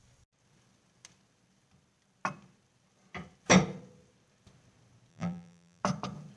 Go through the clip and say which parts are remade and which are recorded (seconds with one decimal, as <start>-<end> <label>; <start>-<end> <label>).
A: 0.0-5.1 recorded; 5.1-5.8 remade; 5.8-6.4 recorded